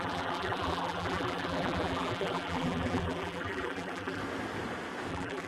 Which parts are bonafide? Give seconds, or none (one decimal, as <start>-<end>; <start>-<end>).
4.2-5.1